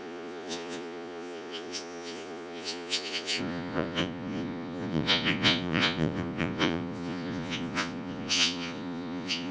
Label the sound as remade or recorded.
remade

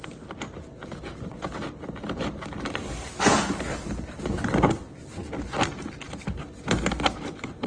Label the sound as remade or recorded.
recorded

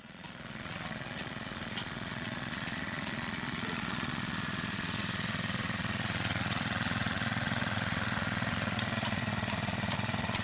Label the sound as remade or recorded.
remade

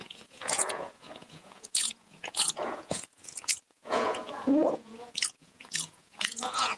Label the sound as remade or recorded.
remade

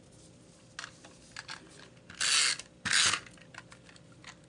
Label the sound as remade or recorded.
recorded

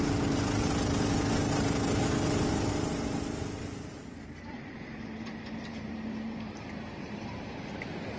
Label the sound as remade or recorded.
remade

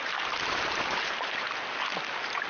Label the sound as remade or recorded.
recorded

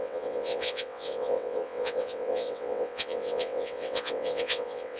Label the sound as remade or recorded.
remade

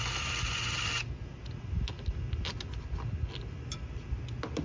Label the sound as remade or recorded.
recorded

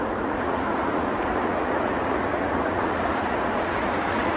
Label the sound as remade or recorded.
remade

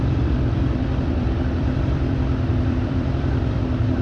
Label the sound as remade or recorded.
remade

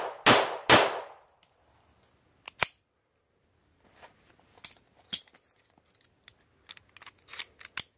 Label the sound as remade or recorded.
recorded